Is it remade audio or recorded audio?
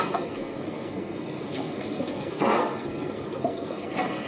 remade